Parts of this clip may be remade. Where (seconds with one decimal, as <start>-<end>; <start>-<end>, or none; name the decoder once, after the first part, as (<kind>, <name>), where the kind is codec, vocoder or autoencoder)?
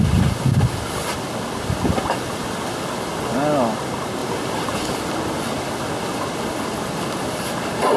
none